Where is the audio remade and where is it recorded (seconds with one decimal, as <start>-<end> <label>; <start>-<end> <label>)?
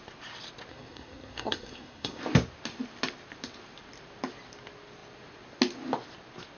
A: 0.0-0.7 recorded; 0.7-2.2 remade; 2.2-6.6 recorded